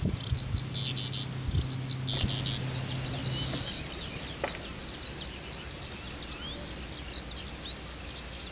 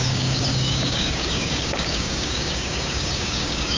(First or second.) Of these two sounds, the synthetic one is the second